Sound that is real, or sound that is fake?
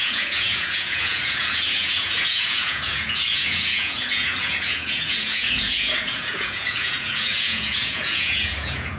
fake